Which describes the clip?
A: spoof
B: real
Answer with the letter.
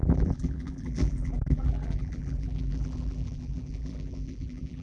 A